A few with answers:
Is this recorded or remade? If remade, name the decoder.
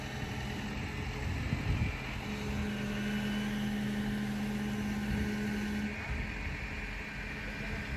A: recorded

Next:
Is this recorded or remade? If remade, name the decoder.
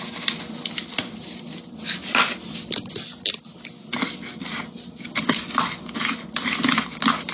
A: recorded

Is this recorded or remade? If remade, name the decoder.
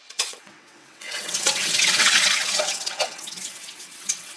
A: remade, vocoder, WaveNeXt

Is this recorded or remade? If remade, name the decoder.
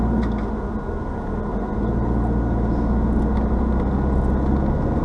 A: recorded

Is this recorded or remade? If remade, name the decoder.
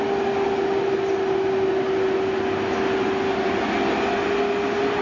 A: recorded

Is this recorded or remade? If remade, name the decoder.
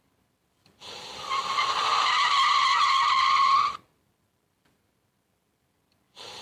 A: remade, vocoder, BigVGAN v2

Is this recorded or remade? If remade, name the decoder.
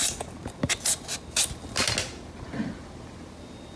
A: recorded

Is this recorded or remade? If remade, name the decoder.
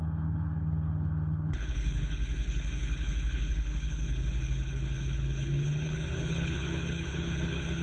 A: remade, codec, HILCodec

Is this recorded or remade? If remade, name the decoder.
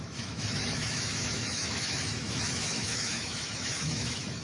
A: remade, autoencoder, DAC-VAE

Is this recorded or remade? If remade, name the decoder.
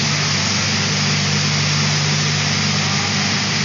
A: recorded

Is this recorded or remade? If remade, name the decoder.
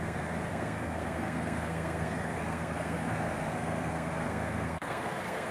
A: remade, codec, SNAC